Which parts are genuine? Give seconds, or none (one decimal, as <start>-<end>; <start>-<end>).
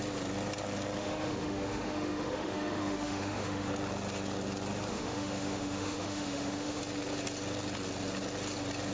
0.0-1.0; 3.7-4.9; 6.8-8.9